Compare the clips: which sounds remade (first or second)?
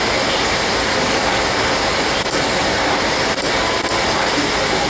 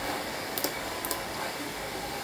second